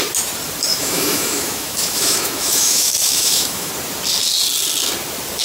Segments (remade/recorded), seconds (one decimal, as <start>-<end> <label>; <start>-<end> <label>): 0.0-0.7 recorded; 0.7-3.7 remade; 3.7-5.4 recorded